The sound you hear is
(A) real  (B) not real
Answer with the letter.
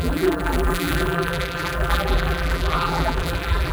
B